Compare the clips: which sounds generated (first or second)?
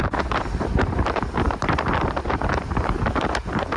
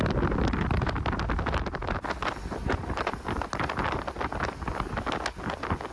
first